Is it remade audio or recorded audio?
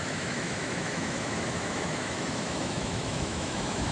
remade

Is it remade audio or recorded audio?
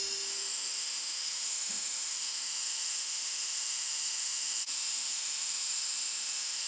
remade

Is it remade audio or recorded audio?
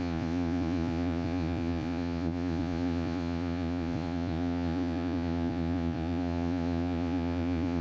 remade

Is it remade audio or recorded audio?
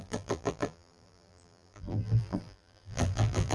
remade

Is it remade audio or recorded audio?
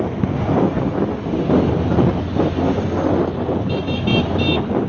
recorded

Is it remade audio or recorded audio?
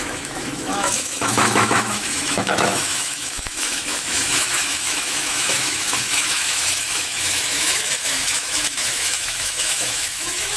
remade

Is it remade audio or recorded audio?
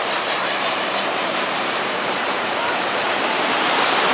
remade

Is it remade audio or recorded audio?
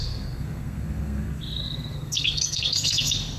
remade